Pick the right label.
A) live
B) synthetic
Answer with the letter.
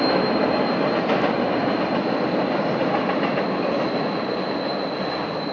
A